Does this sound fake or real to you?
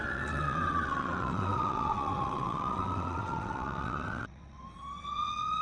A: fake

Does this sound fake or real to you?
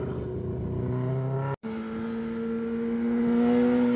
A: real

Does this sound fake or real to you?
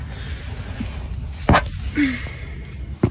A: real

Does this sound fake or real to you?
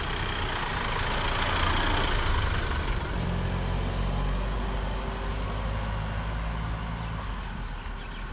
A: real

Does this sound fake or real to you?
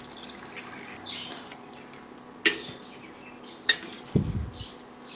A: real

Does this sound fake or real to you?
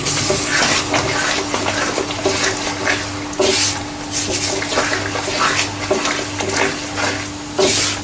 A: real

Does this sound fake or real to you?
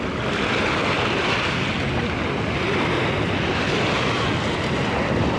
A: real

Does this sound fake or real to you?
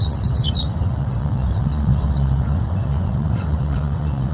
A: fake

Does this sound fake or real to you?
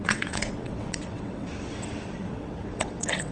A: fake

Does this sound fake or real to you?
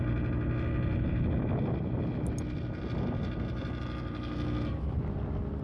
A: real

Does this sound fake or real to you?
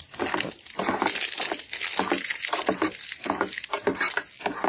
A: real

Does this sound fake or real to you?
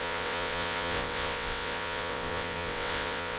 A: fake